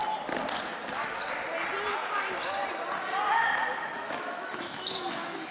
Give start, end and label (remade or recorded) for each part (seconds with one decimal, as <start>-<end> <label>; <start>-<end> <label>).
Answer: 0.0-3.8 recorded; 3.8-5.5 remade